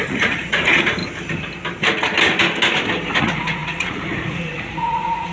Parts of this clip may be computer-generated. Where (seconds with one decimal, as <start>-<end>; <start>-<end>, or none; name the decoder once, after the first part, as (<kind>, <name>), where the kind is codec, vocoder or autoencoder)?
0.0-1.0 (vocoder, Vocos); 3.2-5.3